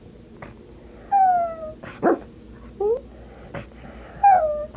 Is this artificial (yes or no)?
no